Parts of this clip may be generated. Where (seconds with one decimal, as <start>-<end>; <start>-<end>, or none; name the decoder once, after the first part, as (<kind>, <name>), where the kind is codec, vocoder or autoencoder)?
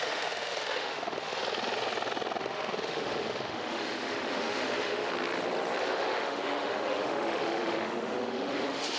0.0-1.4 (autoencoder, DAC-VAE); 2.4-5.1; 5.8-9.0